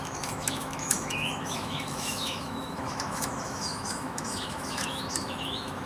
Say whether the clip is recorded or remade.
remade